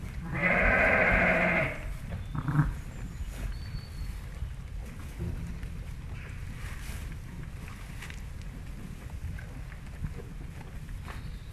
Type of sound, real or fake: real